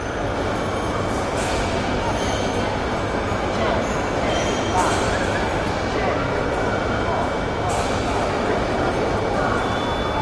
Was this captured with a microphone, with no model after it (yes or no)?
yes